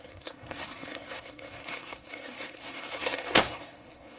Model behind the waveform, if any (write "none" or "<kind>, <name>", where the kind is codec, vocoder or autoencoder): codec, SNAC